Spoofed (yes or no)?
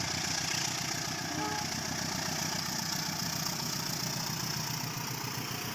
no